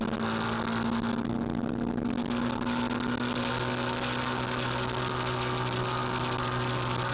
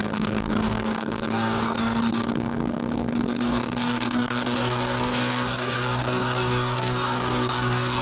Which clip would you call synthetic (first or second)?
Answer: second